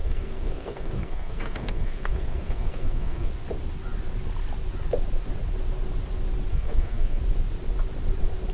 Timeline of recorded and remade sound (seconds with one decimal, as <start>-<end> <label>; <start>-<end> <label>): 0.0-3.3 remade; 3.3-6.5 recorded; 6.5-7.2 remade; 7.2-8.5 recorded